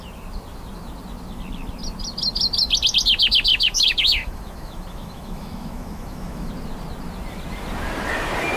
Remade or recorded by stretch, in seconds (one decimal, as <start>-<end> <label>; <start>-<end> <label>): 0.0-3.5 recorded; 3.5-6.5 remade; 6.5-8.6 recorded